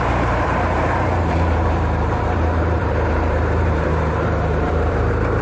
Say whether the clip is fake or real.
fake